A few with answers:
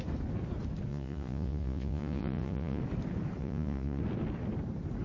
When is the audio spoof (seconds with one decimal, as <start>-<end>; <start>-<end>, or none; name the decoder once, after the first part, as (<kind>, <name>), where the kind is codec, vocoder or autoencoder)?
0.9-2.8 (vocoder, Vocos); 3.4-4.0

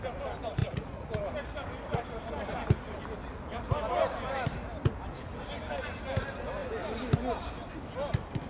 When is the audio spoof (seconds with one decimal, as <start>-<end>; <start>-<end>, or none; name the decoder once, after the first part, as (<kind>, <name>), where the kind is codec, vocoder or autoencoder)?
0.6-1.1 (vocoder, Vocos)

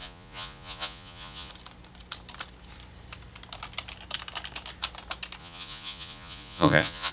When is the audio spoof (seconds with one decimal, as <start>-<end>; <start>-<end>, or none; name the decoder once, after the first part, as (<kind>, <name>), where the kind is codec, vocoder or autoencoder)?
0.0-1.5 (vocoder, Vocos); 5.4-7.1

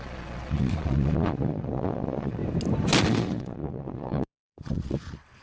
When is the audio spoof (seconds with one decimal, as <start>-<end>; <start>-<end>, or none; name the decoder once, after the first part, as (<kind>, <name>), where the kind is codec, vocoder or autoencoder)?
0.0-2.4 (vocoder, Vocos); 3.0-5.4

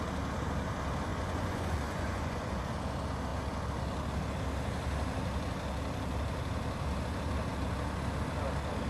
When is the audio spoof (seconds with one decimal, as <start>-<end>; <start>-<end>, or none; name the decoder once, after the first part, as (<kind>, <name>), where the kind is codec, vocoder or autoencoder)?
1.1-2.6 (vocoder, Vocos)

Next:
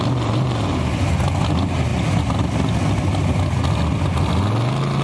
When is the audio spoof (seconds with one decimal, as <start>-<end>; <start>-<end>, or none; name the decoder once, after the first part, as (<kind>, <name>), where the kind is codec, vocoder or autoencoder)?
none

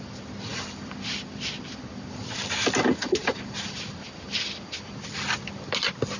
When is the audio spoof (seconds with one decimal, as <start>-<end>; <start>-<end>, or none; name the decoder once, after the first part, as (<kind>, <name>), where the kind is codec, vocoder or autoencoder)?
none

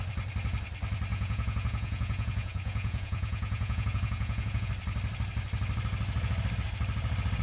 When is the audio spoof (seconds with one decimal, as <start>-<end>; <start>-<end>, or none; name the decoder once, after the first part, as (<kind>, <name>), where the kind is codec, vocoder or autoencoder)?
1.1-4.7 (vocoder, Vocos)